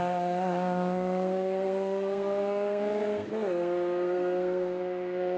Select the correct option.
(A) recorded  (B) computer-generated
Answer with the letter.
B